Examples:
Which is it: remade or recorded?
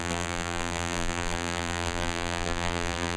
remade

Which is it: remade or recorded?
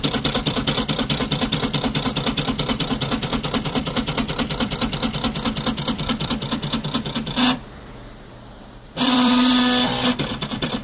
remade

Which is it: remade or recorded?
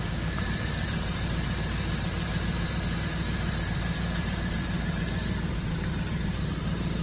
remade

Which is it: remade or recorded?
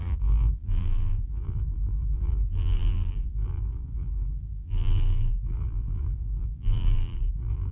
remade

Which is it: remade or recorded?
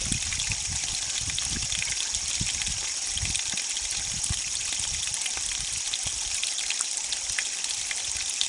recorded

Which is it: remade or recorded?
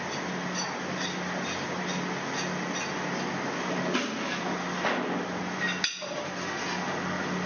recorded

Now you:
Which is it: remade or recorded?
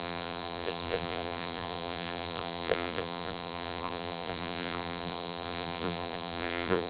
remade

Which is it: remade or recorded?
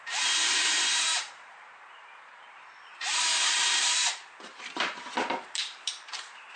remade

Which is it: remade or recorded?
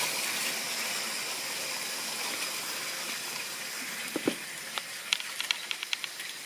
remade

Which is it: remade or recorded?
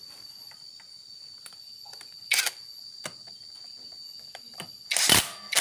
recorded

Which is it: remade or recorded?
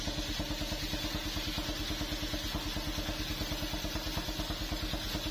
recorded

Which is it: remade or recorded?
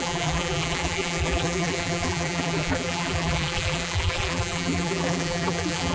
remade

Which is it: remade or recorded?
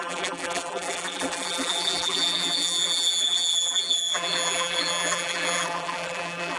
remade